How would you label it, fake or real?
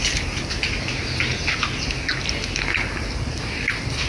real